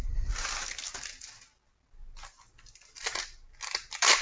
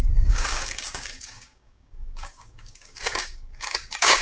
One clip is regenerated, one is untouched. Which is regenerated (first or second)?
second